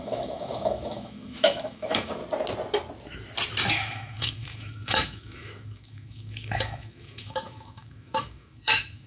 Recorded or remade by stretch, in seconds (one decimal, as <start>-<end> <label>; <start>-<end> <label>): 0.0-2.2 remade; 2.2-3.7 recorded; 3.7-9.1 remade